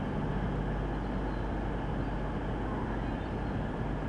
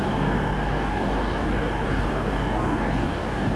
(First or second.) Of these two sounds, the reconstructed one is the second